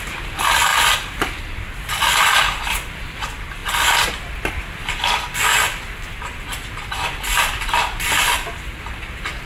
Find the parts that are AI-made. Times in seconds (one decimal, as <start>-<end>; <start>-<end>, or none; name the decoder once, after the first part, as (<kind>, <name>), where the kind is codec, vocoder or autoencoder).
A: none